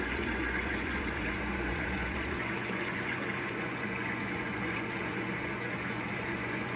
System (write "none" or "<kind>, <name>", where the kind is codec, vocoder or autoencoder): vocoder, Vocos